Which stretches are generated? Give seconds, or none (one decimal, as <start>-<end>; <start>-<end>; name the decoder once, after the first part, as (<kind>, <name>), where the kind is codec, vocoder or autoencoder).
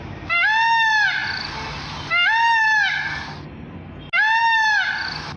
none